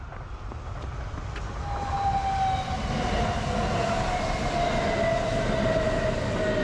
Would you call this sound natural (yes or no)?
yes